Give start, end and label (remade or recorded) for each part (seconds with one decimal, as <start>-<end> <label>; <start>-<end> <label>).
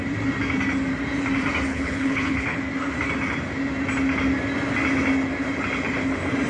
0.0-1.7 recorded; 1.7-2.6 remade; 2.6-6.5 recorded